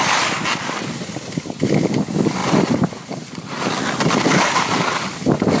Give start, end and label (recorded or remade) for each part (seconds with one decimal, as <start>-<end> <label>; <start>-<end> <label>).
0.0-2.4 recorded; 2.4-3.1 remade; 3.1-5.6 recorded